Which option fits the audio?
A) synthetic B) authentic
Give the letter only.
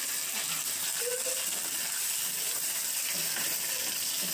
B